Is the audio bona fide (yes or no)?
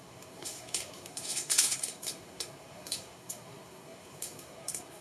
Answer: no